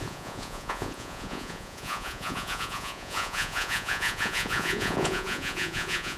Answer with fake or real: fake